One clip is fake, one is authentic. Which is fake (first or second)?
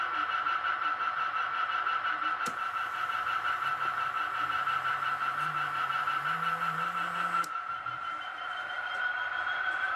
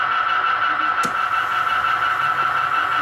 first